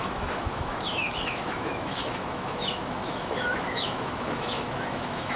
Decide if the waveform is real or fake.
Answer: fake